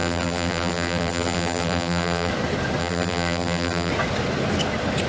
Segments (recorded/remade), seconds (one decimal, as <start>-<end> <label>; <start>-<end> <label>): 0.0-2.3 remade; 2.3-2.8 recorded; 2.8-3.9 remade; 3.9-5.1 recorded